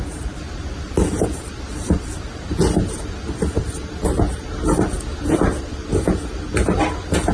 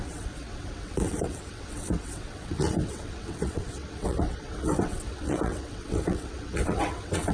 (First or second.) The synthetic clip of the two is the second